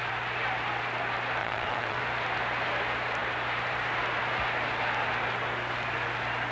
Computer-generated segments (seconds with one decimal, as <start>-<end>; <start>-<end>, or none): 1.4-2.0